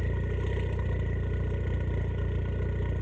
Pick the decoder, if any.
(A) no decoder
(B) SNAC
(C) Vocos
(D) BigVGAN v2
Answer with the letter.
A